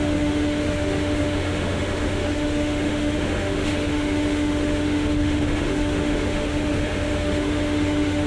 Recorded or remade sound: remade